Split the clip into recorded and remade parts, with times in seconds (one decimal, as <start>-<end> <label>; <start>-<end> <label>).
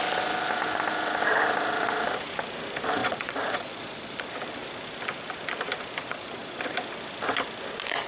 0.0-3.0 recorded; 3.0-4.3 remade; 4.3-6.0 recorded; 6.0-6.6 remade; 6.6-8.1 recorded